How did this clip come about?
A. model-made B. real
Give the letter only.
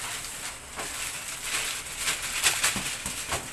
B